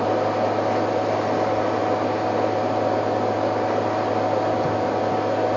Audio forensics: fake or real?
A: real